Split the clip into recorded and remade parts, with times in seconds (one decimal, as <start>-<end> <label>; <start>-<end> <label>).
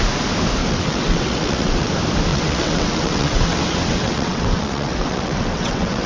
0.0-0.6 recorded; 0.6-1.9 remade; 1.9-2.3 recorded; 2.3-6.1 remade